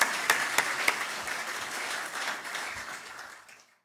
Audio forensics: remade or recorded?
remade